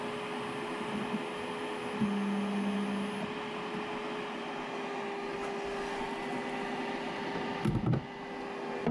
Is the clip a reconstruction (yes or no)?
no